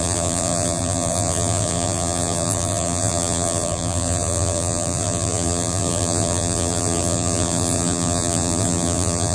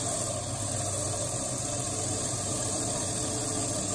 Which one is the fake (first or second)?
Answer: first